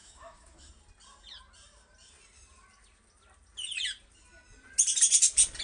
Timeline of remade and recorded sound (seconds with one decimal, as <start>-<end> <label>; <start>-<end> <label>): 0.0-0.7 remade; 0.7-5.6 recorded